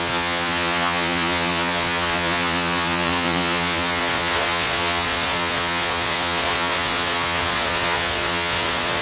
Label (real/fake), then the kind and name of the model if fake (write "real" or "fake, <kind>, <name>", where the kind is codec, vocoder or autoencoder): fake, vocoder, Vocos